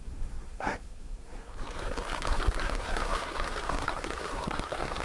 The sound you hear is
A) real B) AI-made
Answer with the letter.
B